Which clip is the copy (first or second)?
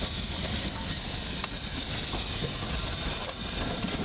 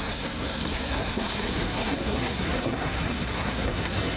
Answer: second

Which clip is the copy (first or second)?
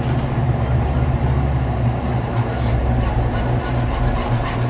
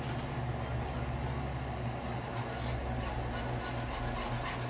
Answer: first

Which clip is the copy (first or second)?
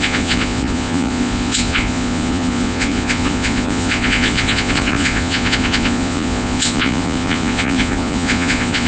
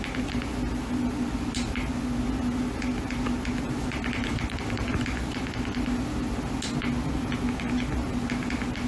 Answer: first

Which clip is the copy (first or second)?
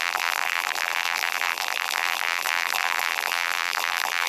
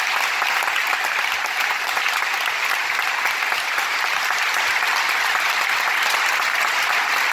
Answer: first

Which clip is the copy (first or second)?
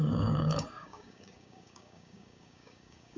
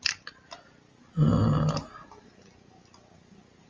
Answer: first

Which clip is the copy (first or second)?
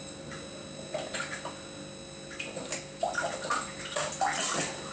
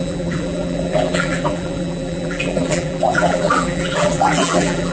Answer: second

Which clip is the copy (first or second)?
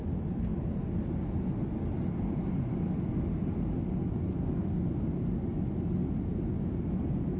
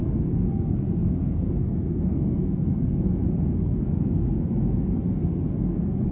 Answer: second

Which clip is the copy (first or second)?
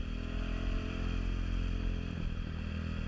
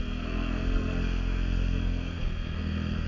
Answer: second